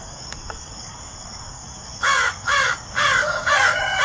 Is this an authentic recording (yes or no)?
no